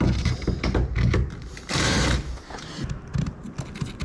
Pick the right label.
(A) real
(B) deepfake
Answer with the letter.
A